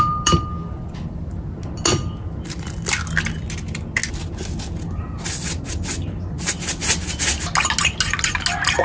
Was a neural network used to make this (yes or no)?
no